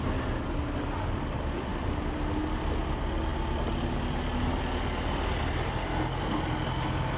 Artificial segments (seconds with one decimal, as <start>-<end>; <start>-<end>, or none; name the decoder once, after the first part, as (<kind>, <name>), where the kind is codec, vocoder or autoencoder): none